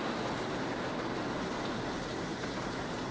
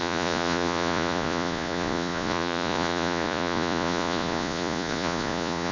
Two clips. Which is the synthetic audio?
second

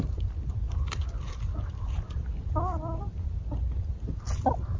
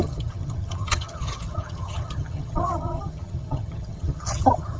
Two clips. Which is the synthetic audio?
second